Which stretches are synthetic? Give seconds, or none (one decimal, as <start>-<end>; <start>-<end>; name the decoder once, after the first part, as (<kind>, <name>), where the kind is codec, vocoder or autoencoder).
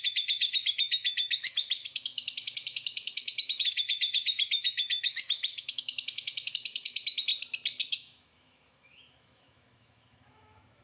0.0-7.3 (autoencoder, DAC-VAE); 7.9-10.8